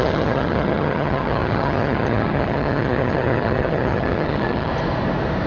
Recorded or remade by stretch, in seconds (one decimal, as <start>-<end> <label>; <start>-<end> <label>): 0.0-4.7 remade; 4.7-5.5 recorded